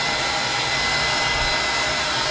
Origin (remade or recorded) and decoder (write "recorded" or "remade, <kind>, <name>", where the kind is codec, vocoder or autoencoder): recorded